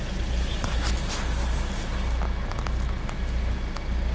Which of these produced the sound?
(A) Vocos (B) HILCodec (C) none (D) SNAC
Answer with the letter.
C